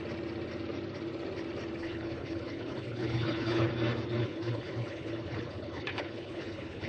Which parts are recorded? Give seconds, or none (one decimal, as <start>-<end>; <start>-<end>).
0.0-1.8; 3.7-4.2